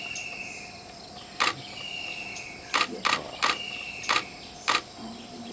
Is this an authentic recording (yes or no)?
yes